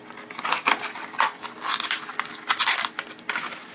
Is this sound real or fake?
real